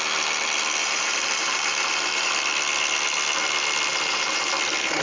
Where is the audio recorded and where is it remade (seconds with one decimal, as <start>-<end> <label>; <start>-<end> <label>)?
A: 0.0-0.8 recorded; 0.8-2.3 remade; 2.3-3.9 recorded; 3.9-4.5 remade; 4.5-5.0 recorded